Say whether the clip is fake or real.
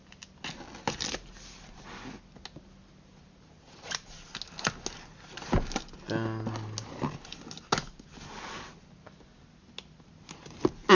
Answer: real